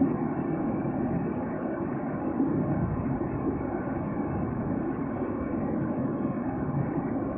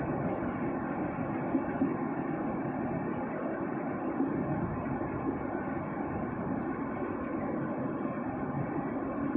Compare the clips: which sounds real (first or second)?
second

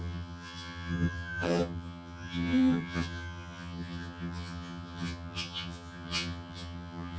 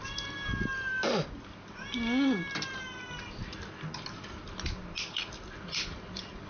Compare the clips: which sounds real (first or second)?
second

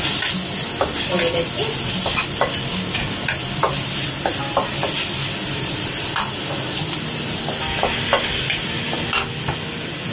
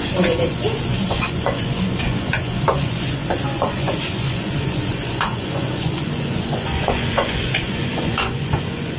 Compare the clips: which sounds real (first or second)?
first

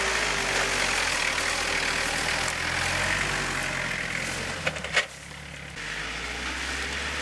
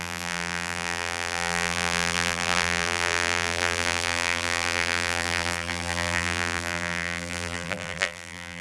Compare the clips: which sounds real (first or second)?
first